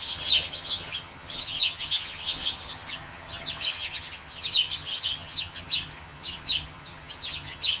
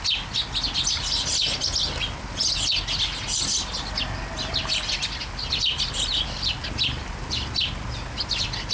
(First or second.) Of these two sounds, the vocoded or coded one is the first